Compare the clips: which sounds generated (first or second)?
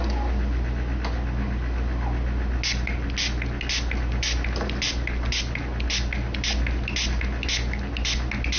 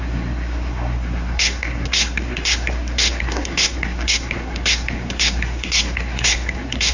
second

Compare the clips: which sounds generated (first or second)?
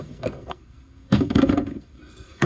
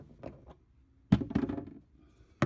first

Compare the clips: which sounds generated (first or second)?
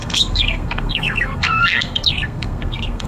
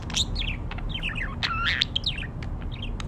first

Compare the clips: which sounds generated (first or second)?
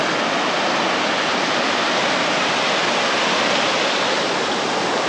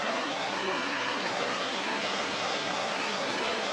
second